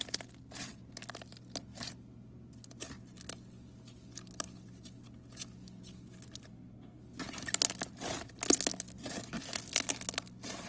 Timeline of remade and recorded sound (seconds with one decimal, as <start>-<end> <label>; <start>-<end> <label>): 0.0-6.5 recorded; 6.5-7.0 remade; 7.0-10.7 recorded